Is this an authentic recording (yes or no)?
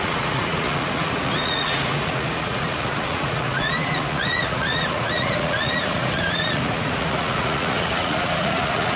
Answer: no